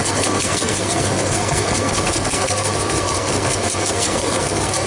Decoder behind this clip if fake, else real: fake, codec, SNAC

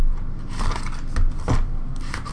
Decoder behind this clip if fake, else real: real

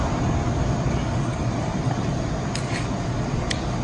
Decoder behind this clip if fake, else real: real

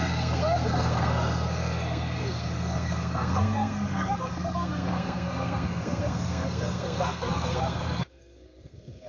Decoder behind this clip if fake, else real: fake, codec, SNAC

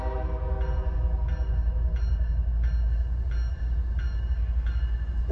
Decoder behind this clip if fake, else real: real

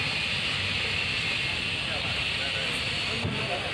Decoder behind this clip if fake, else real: real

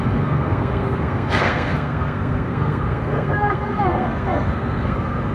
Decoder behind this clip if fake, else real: fake, codec, SNAC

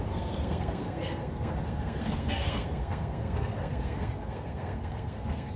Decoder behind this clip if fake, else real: fake, codec, SNAC